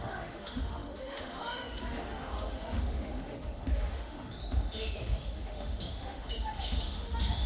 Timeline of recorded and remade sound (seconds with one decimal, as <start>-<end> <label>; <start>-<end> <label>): 0.0-7.5 remade